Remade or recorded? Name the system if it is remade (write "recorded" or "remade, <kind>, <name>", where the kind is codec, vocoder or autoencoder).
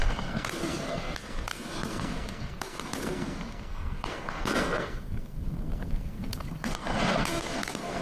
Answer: remade, codec, SNAC